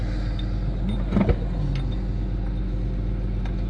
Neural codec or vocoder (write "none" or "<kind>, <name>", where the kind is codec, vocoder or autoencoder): none